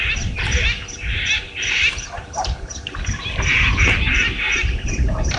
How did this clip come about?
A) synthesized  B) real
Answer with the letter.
A